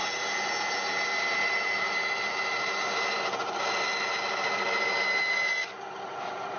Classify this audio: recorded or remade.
recorded